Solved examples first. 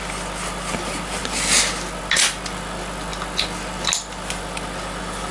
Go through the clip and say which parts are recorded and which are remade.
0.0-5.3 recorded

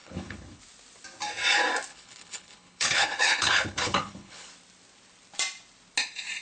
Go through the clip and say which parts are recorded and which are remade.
0.0-0.6 remade; 0.6-1.9 recorded; 1.9-4.5 remade; 4.5-6.4 recorded

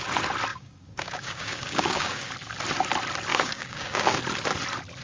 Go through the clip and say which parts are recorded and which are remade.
0.0-0.5 recorded; 0.5-2.3 remade; 2.3-3.3 recorded; 3.3-4.2 remade; 4.2-5.0 recorded

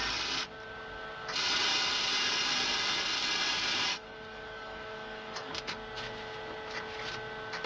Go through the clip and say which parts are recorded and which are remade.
0.0-3.9 recorded; 3.9-5.5 remade; 5.5-7.7 recorded

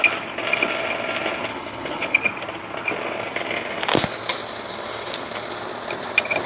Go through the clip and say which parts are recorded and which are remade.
0.0-1.5 recorded; 1.5-2.2 remade; 2.2-6.5 recorded

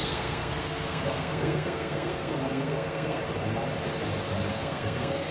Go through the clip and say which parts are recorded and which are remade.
0.0-3.2 remade; 3.2-4.5 recorded; 4.5-5.3 remade

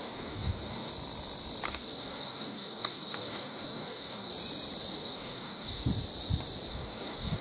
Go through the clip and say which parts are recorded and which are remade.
0.0-0.9 remade; 0.9-1.7 recorded; 1.7-4.3 remade; 4.3-4.9 recorded; 4.9-5.9 remade; 5.9-6.7 recorded; 6.7-7.4 remade

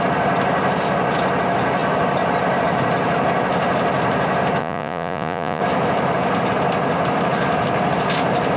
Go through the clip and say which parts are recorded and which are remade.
0.0-4.6 recorded; 4.6-5.6 remade; 5.6-8.6 recorded